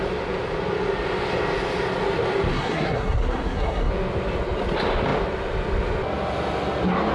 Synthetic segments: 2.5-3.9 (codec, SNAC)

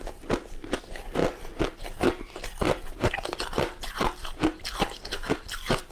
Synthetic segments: none